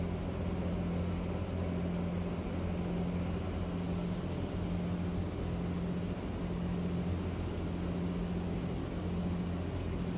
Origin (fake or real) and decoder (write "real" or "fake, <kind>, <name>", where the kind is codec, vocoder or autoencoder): real